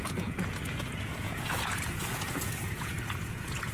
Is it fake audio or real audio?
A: fake